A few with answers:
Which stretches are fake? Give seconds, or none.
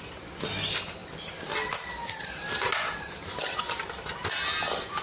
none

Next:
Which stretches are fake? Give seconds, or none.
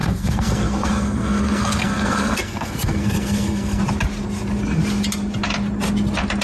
0.0-3.8 (codec, SNAC)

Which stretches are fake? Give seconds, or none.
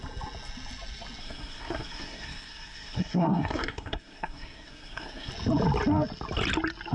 1.2-5.3 (codec, SNAC)